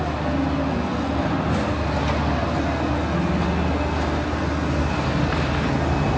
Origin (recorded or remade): recorded